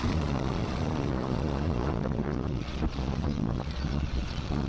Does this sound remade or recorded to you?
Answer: remade